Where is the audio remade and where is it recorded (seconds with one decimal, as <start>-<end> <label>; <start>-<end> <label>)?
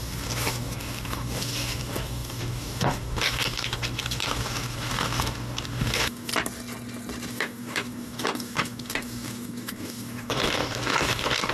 0.0-6.3 remade; 6.3-7.3 recorded; 7.3-11.5 remade